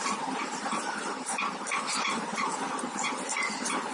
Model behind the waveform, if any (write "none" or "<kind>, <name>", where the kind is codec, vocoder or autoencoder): none